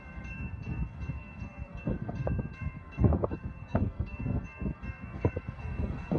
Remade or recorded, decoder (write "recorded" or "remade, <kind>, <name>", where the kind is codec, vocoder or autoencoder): remade, codec, SNAC